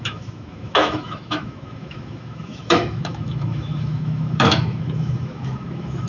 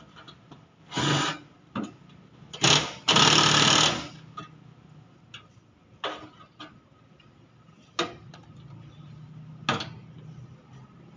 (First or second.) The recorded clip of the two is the second